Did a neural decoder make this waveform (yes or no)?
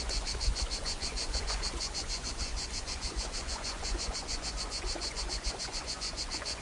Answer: yes